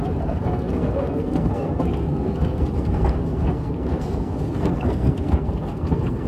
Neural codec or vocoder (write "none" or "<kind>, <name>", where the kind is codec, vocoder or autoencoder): codec, SNAC